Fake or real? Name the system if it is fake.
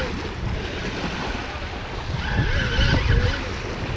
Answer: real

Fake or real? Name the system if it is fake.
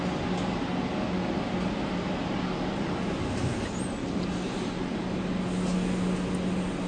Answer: real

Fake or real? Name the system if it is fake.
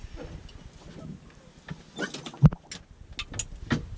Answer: real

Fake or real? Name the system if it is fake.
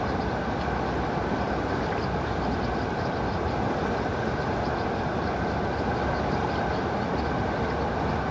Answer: real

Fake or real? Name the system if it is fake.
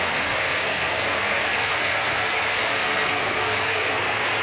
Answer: fake, codec, SNAC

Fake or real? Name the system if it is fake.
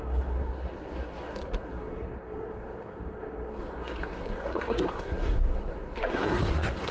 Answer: fake, codec, SNAC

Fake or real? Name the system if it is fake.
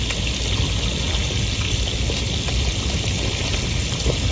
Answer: real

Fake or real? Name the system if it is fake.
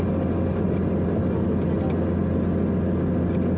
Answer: real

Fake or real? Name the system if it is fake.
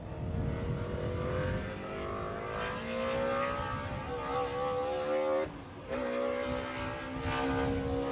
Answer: real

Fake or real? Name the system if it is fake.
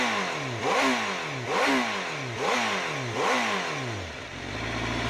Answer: real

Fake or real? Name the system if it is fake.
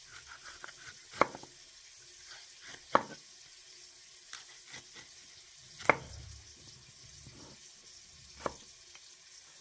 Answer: real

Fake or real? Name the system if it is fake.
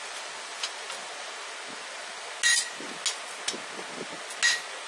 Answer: real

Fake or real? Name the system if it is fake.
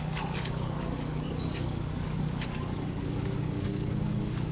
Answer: fake, codec, DAC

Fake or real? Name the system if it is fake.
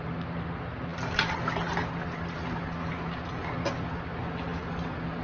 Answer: real